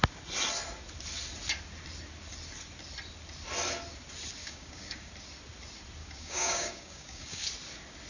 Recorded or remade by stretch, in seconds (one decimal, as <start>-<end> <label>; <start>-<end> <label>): 0.0-4.4 recorded; 4.4-5.1 remade; 5.1-6.0 recorded; 6.0-7.4 remade; 7.4-8.1 recorded